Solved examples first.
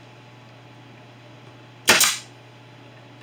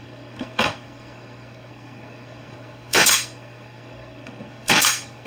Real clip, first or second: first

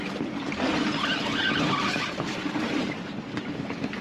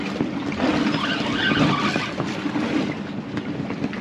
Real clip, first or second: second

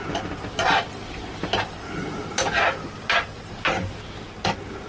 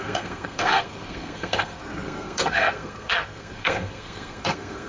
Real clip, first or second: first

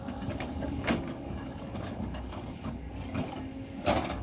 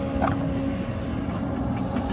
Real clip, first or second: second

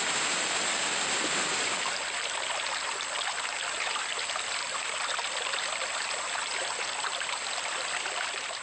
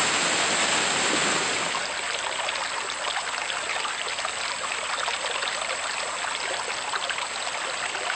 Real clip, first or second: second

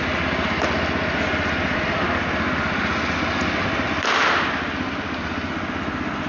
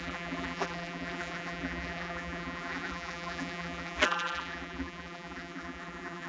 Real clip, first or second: first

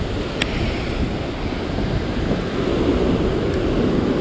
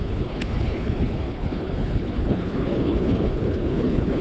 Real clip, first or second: first